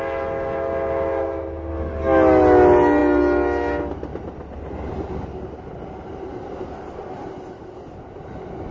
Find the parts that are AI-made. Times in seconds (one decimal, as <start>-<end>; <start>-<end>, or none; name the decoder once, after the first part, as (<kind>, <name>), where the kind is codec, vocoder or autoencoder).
none